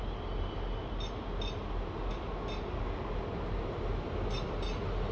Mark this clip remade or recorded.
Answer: recorded